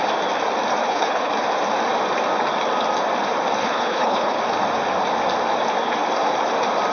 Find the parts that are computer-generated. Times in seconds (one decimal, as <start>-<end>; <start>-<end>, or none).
0.8-1.3; 3.6-4.4